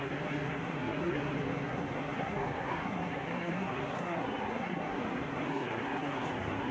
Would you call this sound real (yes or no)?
no